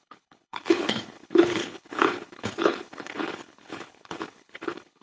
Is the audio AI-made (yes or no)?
yes